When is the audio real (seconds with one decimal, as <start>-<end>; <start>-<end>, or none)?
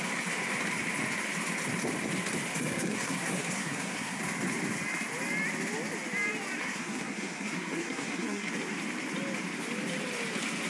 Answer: 0.0-2.5; 4.2-6.6; 8.5-10.7